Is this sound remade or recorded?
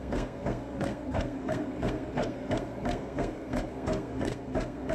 remade